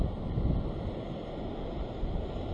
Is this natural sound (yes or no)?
yes